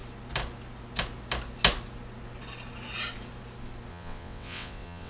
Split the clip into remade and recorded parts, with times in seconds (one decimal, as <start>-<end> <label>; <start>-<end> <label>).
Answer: 0.0-3.9 recorded; 3.9-5.1 remade